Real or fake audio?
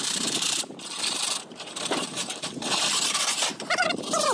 fake